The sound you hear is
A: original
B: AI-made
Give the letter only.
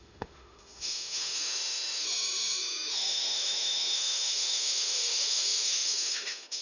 B